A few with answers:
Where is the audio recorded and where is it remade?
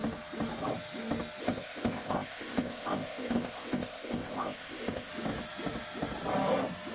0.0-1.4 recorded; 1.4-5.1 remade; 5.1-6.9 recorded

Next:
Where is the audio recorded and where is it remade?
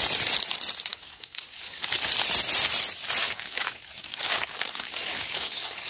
0.0-0.9 recorded; 0.9-2.0 remade; 2.0-3.2 recorded; 3.2-5.9 remade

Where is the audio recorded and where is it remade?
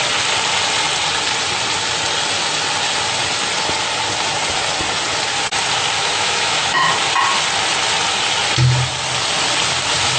0.0-6.0 recorded; 6.0-6.9 remade; 6.9-10.2 recorded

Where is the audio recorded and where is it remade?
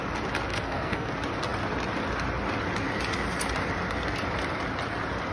0.0-0.5 recorded; 0.5-1.1 remade; 1.1-5.3 recorded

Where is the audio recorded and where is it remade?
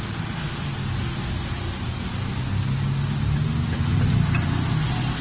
0.0-5.2 recorded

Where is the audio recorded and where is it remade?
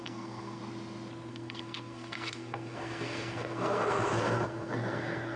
0.0-0.6 remade; 0.6-1.3 recorded; 1.3-5.4 remade